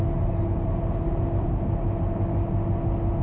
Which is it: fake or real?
real